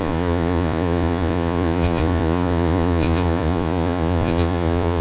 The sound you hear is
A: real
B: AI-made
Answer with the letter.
B